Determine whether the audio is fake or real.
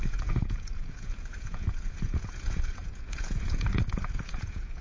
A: fake